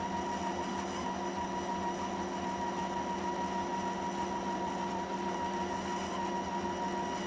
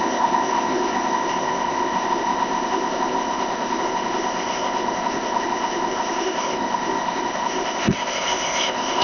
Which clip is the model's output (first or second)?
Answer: second